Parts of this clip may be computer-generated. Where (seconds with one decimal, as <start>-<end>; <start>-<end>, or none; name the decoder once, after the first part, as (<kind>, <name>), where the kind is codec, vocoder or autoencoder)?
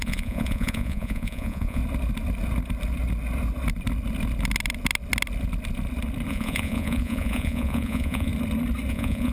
0.0-1.8 (vocoder, Vocos); 6.3-8.3; 8.9-9.3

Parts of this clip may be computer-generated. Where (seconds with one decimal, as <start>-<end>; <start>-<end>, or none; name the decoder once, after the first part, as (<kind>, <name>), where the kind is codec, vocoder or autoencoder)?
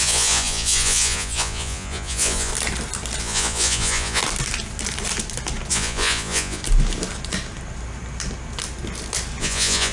0.0-2.5 (vocoder, Vocos); 3.2-4.2; 5.7-6.6; 9.4-9.9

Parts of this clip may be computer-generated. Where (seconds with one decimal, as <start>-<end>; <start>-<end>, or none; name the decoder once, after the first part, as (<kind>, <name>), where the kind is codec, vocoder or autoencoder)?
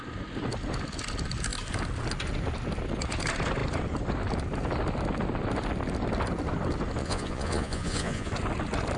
7.0-8.3 (vocoder, Vocos)